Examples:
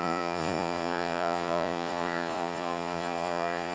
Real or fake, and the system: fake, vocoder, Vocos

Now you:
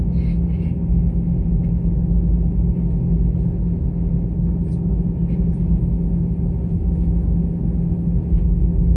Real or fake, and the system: real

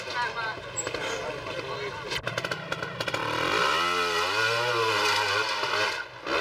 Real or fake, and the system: real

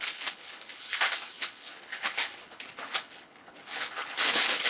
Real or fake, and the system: fake, codec, HILCodec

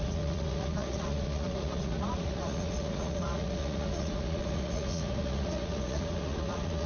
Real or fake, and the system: fake, vocoder, Vocos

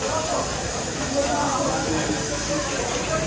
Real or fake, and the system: real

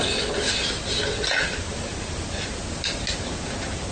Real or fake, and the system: real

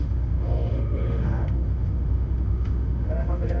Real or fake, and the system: fake, autoencoder, DAC-VAE